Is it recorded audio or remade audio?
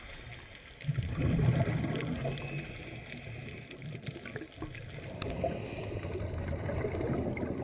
recorded